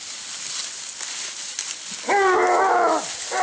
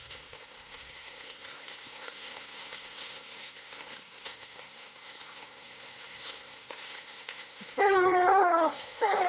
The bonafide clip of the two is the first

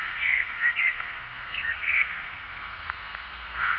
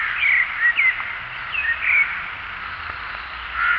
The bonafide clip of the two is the second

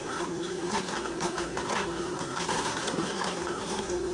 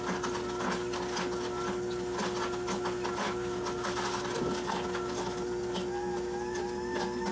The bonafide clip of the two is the second